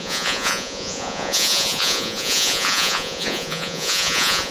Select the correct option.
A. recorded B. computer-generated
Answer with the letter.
B